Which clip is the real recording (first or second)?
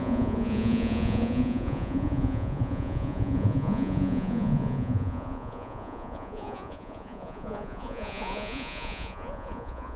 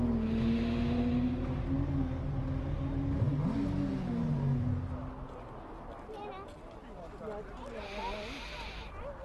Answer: second